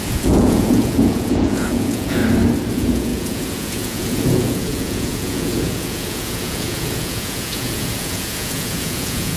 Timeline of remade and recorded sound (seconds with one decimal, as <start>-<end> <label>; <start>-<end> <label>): 0.0-2.2 remade; 2.2-2.7 recorded; 2.7-9.4 remade